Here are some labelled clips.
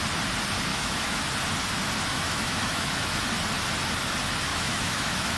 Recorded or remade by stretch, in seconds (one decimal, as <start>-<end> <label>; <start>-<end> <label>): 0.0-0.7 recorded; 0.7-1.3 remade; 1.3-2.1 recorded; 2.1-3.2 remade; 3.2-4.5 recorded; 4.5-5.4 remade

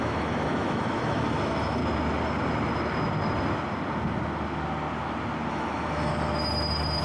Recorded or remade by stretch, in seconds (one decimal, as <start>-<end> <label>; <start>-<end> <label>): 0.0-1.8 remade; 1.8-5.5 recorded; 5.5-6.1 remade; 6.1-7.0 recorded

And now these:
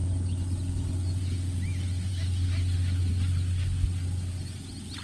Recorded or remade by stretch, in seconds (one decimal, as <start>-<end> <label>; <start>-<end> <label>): 0.0-5.0 recorded

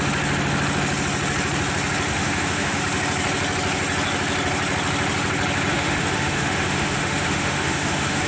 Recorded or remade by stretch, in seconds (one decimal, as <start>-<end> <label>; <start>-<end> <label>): 0.0-2.1 recorded; 2.1-2.8 remade; 2.8-5.7 recorded; 5.7-8.3 remade

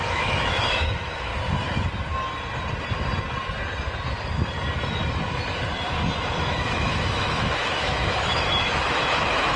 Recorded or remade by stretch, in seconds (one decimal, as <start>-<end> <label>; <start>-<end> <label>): 0.0-1.3 remade; 1.3-6.4 recorded; 6.4-9.6 remade